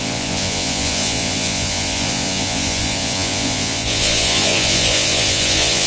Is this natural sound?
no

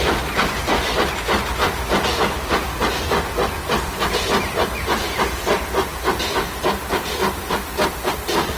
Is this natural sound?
yes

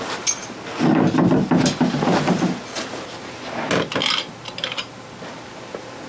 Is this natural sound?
yes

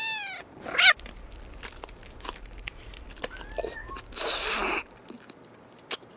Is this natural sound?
yes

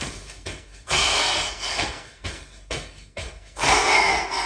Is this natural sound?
no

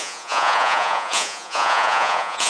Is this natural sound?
no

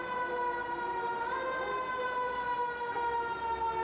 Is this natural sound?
yes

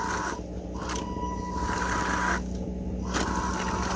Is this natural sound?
yes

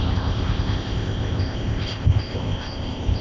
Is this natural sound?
no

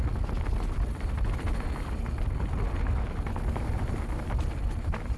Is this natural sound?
yes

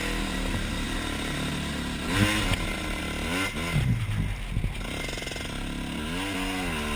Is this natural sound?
yes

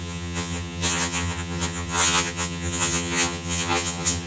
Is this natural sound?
no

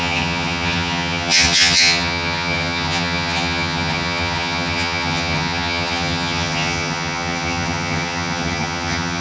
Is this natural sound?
no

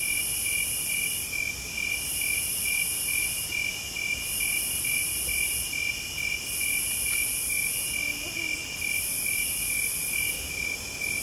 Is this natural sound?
yes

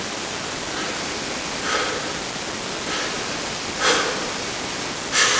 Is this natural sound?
yes